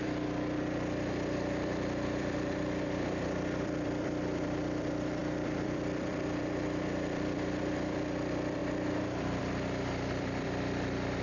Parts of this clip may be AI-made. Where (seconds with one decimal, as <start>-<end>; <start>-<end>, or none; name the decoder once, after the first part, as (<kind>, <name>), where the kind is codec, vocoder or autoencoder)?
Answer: 0.0-11.2 (vocoder, BigVGAN v2)